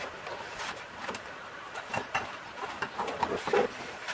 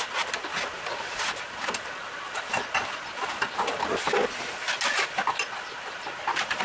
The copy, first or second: first